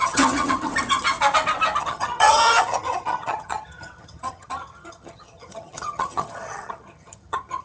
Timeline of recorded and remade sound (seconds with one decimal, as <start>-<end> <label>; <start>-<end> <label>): 0.0-0.7 remade; 0.7-1.8 recorded; 1.8-7.6 remade